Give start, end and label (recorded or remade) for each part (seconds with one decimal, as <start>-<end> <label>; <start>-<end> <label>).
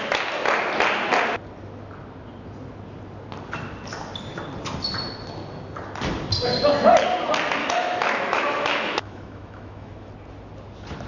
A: 0.0-7.6 recorded; 7.6-10.1 remade; 10.1-11.1 recorded